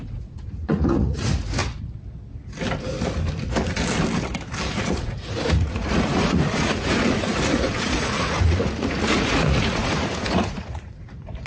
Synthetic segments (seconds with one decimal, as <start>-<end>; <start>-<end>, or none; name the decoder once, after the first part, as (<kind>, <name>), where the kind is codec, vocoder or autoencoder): 0.0-1.6 (vocoder, Vocos); 4.7-11.5